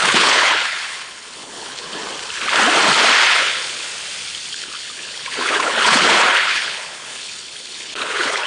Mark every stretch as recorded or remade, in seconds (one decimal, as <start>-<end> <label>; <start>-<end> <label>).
0.0-2.0 remade; 2.0-3.3 recorded; 3.3-3.9 remade; 3.9-4.5 recorded; 4.5-8.5 remade

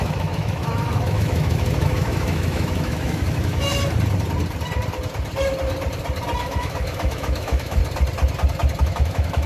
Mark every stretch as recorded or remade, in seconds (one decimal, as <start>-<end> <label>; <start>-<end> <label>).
0.0-3.7 remade; 3.7-6.4 recorded; 6.4-7.8 remade; 7.8-8.8 recorded; 8.8-9.5 remade

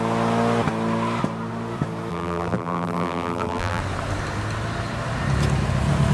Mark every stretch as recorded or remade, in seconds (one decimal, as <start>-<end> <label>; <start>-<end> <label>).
0.0-2.1 recorded; 2.1-3.8 remade; 3.8-6.1 recorded

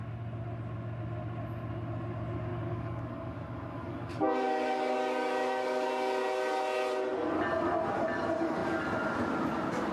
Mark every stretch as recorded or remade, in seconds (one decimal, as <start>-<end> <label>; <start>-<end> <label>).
0.0-2.5 recorded; 2.5-5.9 remade; 5.9-9.9 recorded